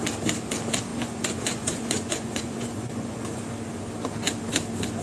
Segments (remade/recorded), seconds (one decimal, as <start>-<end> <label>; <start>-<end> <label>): 0.0-0.9 recorded; 0.9-3.4 remade; 3.4-5.0 recorded

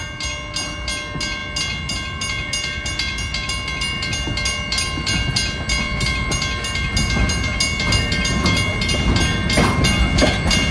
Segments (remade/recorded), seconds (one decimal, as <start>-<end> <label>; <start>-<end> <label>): 0.0-10.7 recorded